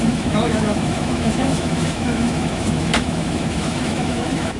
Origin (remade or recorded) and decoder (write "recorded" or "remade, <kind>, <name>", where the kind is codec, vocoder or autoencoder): remade, autoencoder, DAC-VAE